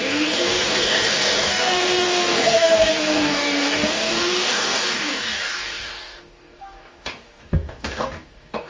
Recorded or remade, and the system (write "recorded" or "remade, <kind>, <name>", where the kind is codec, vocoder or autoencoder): remade, codec, DAC